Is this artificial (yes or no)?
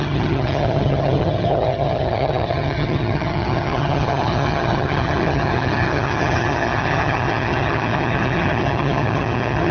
yes